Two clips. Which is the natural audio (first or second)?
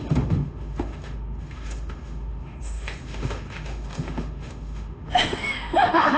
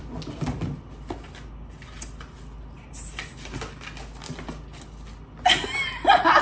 second